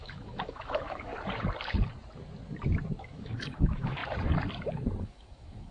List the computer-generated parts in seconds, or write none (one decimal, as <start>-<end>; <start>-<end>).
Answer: 0.0-1.1; 3.0-4.0; 5.0-5.7